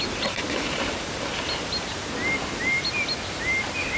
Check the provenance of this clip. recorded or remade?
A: recorded